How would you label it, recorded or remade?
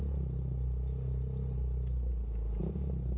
recorded